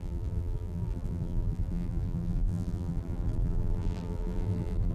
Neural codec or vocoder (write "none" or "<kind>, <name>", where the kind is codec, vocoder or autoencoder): vocoder, BigVGAN v2